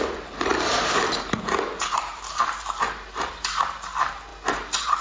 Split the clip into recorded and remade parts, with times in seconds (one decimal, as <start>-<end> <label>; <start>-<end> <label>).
0.0-0.5 recorded; 0.5-3.5 remade; 3.5-5.0 recorded